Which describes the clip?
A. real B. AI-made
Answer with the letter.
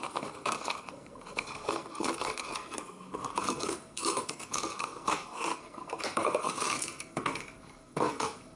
B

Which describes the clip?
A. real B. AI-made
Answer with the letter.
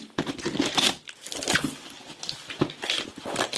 A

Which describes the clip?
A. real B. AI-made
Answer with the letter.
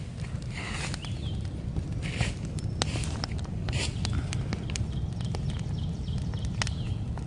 A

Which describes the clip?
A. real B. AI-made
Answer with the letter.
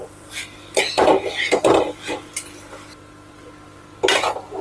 A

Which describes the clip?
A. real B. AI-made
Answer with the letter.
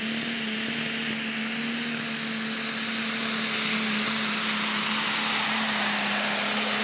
A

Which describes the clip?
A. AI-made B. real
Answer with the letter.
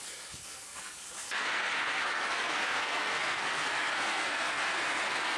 A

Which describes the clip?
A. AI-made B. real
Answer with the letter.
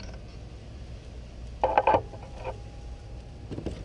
B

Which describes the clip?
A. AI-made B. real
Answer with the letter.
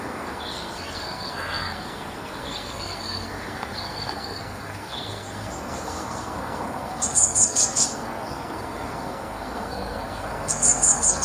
A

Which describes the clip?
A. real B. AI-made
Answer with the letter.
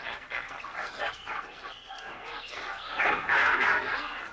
B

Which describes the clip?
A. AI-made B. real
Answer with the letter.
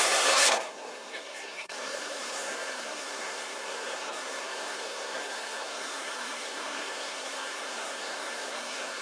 A